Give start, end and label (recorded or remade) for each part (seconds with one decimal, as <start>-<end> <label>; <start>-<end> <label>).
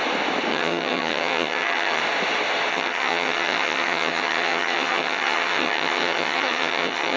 0.0-0.5 recorded; 0.5-2.0 remade; 2.0-2.7 recorded; 2.7-7.2 remade